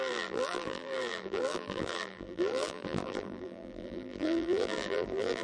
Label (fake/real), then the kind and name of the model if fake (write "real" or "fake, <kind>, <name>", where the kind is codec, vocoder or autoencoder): fake, vocoder, BigVGAN v2